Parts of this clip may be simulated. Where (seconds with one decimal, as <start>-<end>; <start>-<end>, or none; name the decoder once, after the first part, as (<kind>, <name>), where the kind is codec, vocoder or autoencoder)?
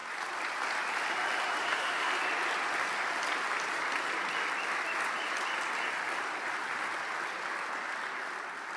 1.6-2.1 (autoencoder, DAC-VAE)